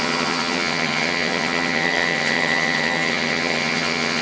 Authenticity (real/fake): fake